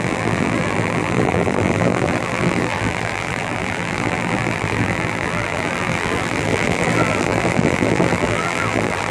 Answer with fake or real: fake